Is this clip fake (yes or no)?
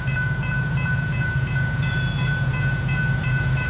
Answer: yes